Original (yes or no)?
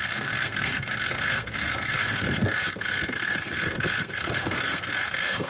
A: no